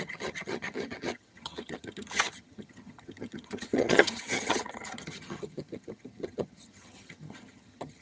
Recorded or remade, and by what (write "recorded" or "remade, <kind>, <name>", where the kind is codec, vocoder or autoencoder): remade, vocoder, HiFi-GAN